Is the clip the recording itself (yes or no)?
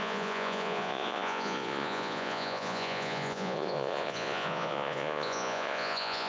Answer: no